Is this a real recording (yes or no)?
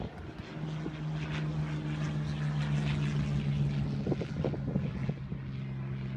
yes